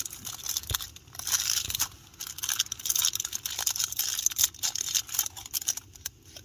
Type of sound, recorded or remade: recorded